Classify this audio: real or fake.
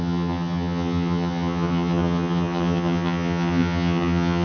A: fake